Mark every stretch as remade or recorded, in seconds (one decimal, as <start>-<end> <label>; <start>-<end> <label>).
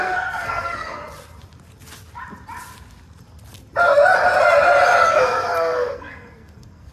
0.0-1.0 remade; 1.0-5.1 recorded; 5.1-6.9 remade